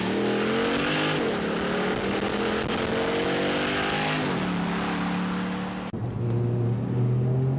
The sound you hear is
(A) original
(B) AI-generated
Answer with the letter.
A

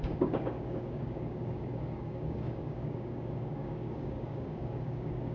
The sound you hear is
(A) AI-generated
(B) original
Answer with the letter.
A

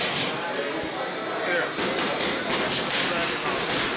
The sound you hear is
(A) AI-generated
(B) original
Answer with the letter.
B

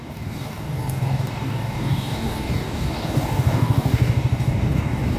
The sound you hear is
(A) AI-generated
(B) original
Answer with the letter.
A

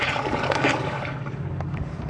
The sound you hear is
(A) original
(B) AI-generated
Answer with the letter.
B